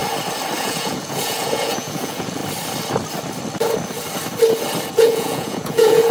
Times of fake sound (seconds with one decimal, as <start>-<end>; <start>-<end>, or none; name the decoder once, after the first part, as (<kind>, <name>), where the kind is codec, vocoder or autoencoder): 0.6-2.4 (vocoder, Vocos); 4.9-6.1